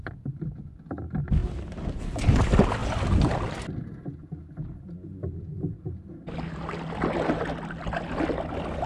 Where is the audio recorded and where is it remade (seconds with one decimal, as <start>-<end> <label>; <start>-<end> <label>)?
0.0-8.9 recorded